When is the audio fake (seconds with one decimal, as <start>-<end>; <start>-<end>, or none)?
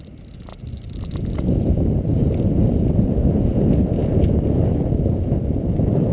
none